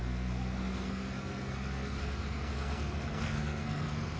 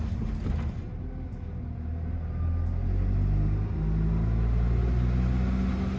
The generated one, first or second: first